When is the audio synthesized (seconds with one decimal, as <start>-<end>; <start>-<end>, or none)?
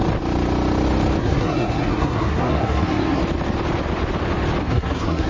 1.2-3.2; 4.6-5.3